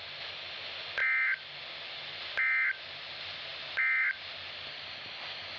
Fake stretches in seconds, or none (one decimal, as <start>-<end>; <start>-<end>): 3.5-4.7

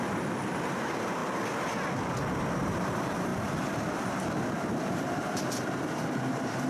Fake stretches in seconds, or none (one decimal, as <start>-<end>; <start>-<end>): 0.0-1.2; 2.8-6.7

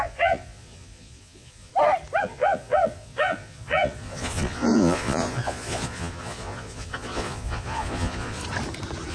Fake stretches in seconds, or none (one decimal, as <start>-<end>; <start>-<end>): 0.0-1.7; 2.2-8.4

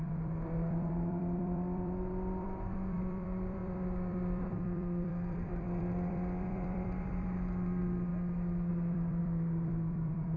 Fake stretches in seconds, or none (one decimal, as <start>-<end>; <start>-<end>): 0.0-8.1; 8.7-10.4